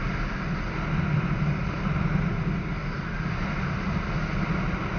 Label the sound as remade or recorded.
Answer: recorded